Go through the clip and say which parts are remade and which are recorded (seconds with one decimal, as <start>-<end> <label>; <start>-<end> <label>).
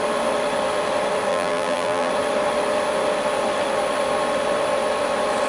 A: 0.0-1.3 recorded; 1.3-2.1 remade; 2.1-5.5 recorded